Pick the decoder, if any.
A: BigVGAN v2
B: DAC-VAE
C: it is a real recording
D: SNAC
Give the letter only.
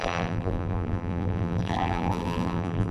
A